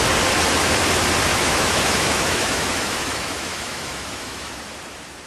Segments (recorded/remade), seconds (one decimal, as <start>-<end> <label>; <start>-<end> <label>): 0.0-1.3 recorded; 1.3-4.5 remade; 4.5-5.3 recorded